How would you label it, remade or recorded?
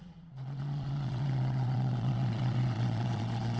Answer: remade